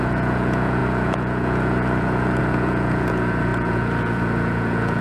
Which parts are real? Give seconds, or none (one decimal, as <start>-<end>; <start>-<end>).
none